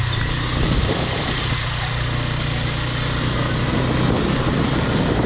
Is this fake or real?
real